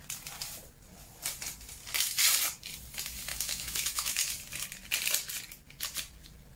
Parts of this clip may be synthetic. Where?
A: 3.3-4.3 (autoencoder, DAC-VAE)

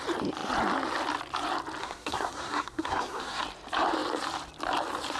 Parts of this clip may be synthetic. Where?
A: 1.8-3.4 (codec, SNAC)

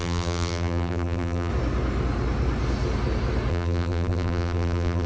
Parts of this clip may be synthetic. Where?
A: 0.0-1.5 (vocoder, BigVGAN v2); 3.5-5.1

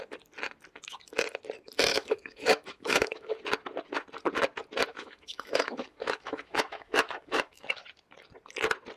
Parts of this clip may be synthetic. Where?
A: 1.9-3.4 (autoencoder, DAC-VAE); 4.9-7.8

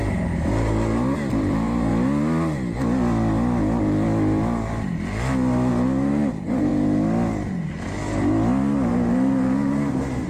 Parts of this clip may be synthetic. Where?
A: 0.0-1.9 (vocoder, BigVGAN v2); 5.7-6.7; 8.9-10.3

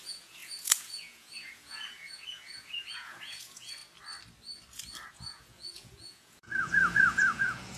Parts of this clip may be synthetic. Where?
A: 0.0-3.8 (vocoder, Vocos); 5.1-7.8

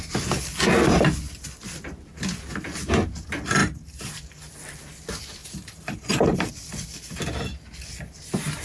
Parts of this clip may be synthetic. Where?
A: 3.6-4.1 (vocoder, BigVGAN v2); 5.4-6.5